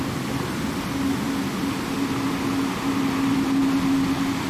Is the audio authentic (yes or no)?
yes